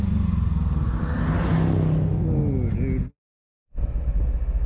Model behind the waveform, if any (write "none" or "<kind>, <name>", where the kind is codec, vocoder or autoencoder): none